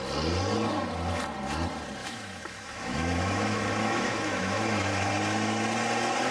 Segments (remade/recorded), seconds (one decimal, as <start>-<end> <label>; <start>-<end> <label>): 0.0-2.0 recorded; 2.0-5.1 remade; 5.1-6.3 recorded